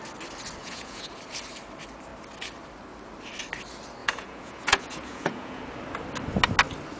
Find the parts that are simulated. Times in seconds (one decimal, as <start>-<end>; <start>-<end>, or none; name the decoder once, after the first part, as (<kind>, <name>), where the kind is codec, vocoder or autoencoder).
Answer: 0.6-1.2 (vocoder, Vocos); 4.0-5.6